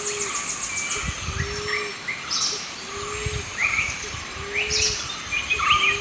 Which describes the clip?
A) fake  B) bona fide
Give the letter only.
B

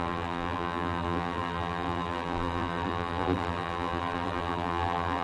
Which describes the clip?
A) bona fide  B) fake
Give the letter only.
B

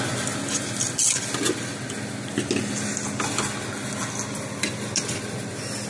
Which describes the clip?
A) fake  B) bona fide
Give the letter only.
B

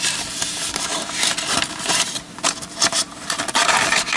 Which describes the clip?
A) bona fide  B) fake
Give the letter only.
B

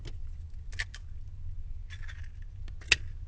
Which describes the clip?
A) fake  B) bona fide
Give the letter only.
B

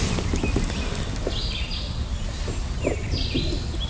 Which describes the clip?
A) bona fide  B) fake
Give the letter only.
B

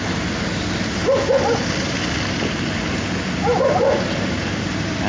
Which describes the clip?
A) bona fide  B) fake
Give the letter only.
A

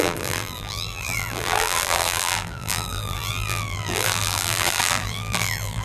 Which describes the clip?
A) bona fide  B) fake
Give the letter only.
B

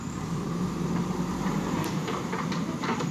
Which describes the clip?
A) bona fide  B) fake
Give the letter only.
B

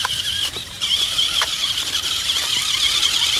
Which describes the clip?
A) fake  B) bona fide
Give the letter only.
A